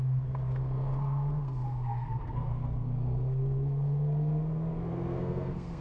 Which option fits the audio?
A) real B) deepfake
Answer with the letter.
B